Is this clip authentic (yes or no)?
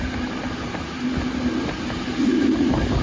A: yes